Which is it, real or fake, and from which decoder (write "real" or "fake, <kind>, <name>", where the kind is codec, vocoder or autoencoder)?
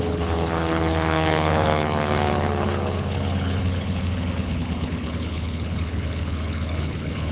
fake, codec, HILCodec